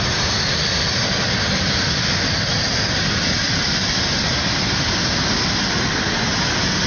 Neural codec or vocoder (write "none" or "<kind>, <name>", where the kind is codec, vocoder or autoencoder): none